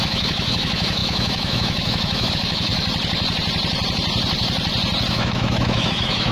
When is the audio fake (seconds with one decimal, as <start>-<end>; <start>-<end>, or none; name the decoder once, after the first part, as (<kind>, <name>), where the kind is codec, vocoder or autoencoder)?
0.0-2.7 (autoencoder, DAC-VAE); 5.1-6.3